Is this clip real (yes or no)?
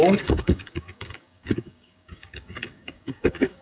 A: no